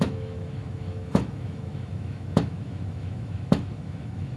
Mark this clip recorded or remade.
remade